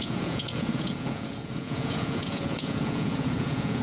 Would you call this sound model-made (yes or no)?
yes